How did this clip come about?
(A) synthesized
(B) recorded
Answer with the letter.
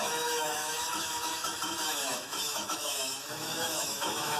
A